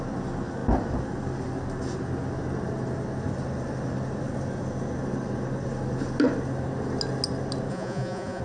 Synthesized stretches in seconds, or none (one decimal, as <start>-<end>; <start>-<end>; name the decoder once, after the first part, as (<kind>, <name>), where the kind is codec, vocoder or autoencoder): 7.7-8.4 (vocoder, Vocos)